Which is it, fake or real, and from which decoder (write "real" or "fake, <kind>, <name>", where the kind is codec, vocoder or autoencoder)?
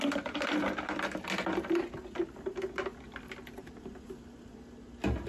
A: real